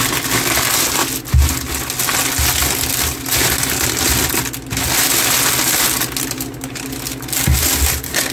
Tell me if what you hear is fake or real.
real